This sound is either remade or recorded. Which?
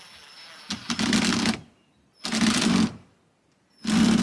recorded